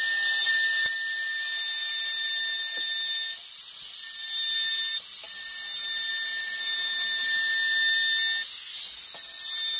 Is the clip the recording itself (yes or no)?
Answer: yes